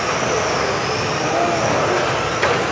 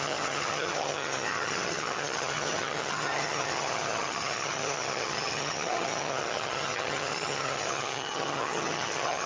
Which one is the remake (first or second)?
second